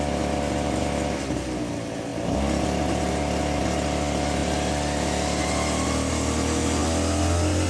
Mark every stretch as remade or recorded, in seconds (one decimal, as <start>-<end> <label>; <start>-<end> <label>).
0.0-7.7 recorded